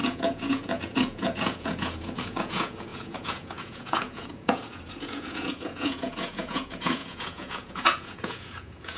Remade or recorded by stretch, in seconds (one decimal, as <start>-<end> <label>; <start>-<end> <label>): 0.0-9.0 remade